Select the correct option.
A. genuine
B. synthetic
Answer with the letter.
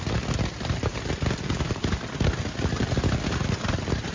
A